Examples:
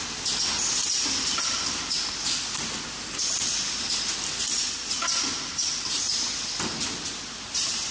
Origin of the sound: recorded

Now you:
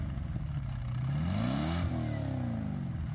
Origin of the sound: recorded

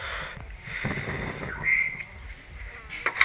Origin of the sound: recorded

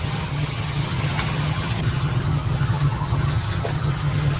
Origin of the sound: remade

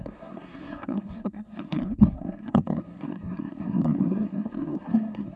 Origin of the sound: remade